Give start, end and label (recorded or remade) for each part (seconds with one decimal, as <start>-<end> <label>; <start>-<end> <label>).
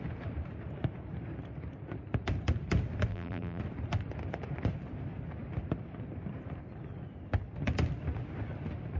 0.0-3.1 recorded; 3.1-3.6 remade; 3.6-9.0 recorded